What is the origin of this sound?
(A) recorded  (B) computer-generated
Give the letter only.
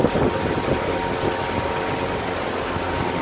A